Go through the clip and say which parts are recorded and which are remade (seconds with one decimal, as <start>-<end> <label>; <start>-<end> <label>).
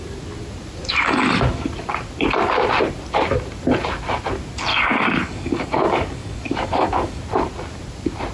0.0-4.7 recorded; 4.7-7.2 remade; 7.2-8.3 recorded